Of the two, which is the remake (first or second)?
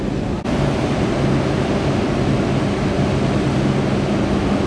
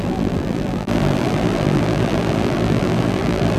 second